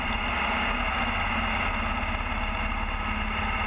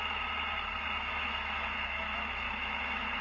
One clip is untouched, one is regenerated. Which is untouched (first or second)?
first